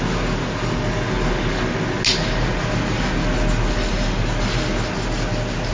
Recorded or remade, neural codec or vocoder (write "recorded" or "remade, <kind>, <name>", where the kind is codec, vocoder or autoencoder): recorded